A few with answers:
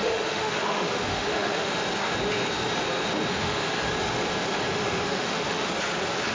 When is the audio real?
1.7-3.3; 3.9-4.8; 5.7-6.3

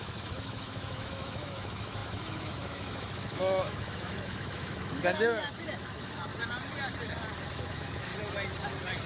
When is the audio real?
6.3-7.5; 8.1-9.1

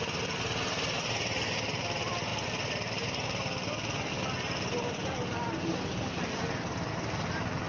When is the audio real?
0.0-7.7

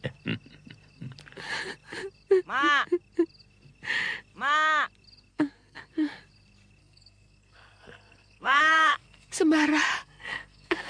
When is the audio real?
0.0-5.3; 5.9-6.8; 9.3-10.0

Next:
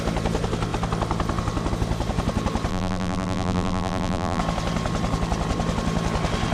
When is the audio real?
0.0-2.7; 4.4-6.5

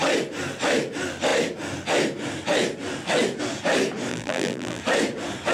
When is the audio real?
0.0-4.1; 4.8-5.5

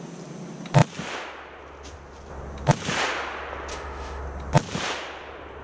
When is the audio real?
0.0-3.7; 4.2-5.6

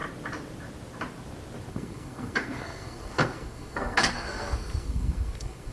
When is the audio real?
0.0-1.7